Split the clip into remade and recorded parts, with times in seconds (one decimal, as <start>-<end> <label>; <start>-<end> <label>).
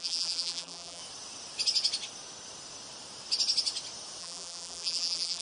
0.0-1.0 remade; 1.0-4.2 recorded; 4.2-5.4 remade